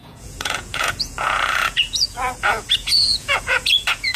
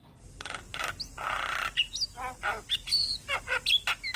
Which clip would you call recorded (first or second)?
second